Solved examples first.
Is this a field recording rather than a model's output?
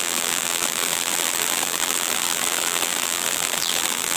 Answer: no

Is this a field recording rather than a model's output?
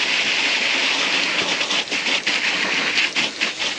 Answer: yes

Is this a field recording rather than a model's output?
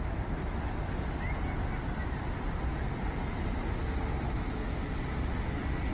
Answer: yes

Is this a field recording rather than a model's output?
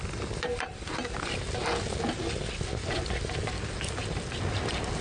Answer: yes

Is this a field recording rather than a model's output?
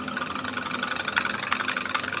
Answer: yes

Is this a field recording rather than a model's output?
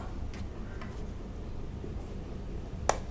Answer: yes